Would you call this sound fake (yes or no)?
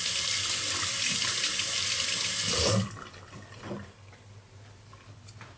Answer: no